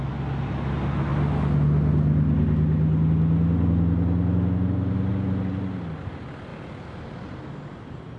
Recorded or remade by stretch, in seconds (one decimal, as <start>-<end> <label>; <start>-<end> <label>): 0.0-8.2 recorded

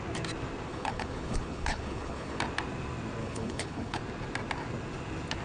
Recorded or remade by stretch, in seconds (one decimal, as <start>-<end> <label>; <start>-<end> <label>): 0.0-0.7 recorded; 0.7-2.4 remade; 2.4-3.2 recorded; 3.2-4.0 remade; 4.0-5.4 recorded

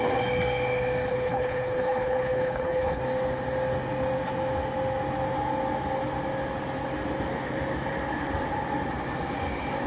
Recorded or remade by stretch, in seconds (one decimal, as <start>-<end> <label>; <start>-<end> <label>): 0.0-1.1 recorded; 1.1-3.0 remade; 3.0-9.9 recorded

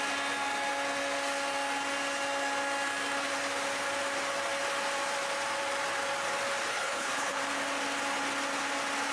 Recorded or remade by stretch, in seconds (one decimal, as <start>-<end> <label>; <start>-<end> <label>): 0.0-6.7 recorded; 6.7-7.4 remade; 7.4-9.1 recorded

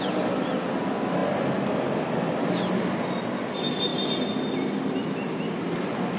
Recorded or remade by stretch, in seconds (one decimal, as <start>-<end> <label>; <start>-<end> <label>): 0.0-6.2 recorded

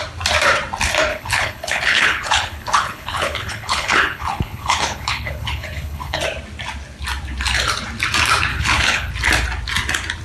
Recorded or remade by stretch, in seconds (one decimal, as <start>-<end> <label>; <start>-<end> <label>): 0.0-1.1 recorded; 1.1-6.2 remade; 6.2-8.5 recorded; 8.5-9.1 remade; 9.1-10.2 recorded

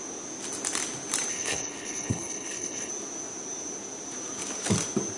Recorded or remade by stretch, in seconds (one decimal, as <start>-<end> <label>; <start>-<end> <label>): 0.0-1.3 recorded; 1.3-2.9 remade; 2.9-5.2 recorded